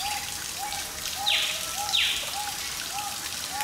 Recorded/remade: remade